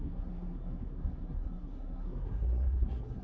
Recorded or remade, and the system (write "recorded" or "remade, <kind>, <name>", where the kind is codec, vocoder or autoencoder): remade, codec, SNAC